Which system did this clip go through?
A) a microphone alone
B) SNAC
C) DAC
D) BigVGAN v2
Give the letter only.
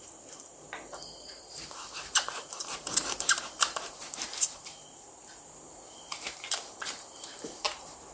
D